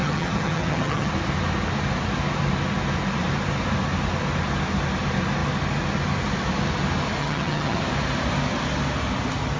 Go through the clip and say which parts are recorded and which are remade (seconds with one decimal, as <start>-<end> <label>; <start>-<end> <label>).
0.0-1.1 remade; 1.1-7.2 recorded; 7.2-7.8 remade; 7.8-9.6 recorded